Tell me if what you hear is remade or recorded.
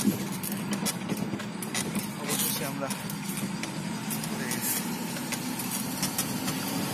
recorded